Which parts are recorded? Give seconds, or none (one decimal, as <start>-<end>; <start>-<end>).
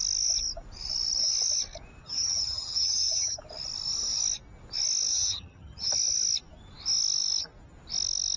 0.0-2.0; 3.4-5.1; 5.9-8.4